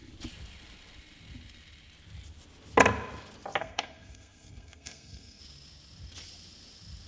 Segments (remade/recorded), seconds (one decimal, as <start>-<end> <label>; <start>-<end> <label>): 0.0-3.6 recorded; 3.6-5.4 remade; 5.4-7.1 recorded